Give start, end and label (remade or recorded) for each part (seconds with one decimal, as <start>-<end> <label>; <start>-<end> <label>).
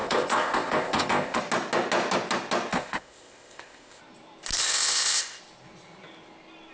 0.0-1.4 remade; 1.4-2.7 recorded; 2.7-4.0 remade; 4.0-4.6 recorded; 4.6-5.4 remade; 5.4-6.7 recorded